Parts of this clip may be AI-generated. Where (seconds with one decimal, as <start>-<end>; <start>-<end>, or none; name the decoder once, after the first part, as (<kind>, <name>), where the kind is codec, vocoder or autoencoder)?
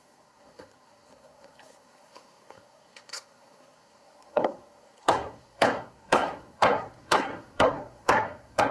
0.0-8.7 (codec, SNAC)